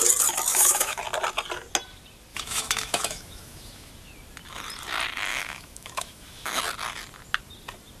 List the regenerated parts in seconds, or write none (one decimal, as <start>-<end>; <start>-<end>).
0.5-1.0; 2.3-3.9; 5.3-6.6